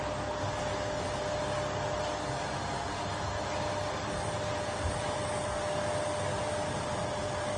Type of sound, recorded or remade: recorded